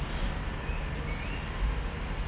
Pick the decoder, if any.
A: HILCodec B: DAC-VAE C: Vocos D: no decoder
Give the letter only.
D